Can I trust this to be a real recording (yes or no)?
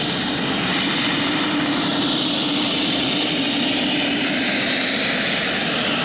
yes